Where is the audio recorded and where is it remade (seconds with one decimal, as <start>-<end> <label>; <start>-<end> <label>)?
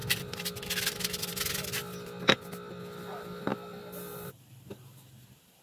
0.0-5.6 recorded